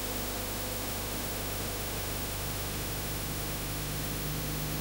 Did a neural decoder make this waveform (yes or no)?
yes